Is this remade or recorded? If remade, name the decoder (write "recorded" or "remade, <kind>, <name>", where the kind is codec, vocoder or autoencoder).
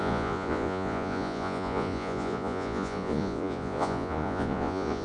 remade, vocoder, Vocos